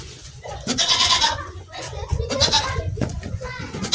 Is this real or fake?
fake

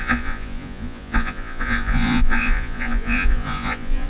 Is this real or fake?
fake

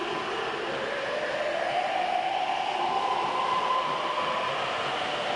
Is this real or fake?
real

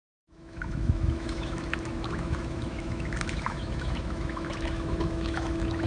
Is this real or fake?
fake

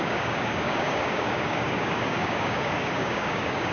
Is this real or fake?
fake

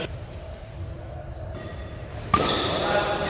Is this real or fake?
real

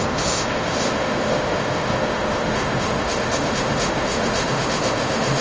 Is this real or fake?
fake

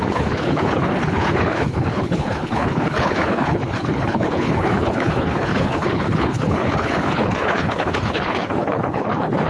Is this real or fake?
fake